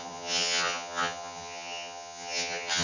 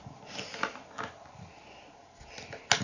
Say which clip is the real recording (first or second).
second